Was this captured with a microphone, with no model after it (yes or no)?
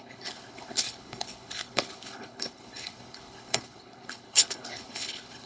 no